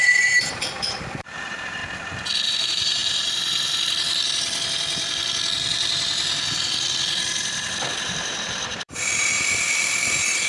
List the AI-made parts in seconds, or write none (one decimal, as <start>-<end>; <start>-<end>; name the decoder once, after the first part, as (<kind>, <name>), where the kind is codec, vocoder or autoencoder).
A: 0.0-1.8 (vocoder, BigVGAN v2); 2.5-3.0; 7.9-10.5